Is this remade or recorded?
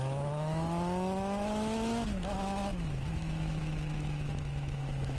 remade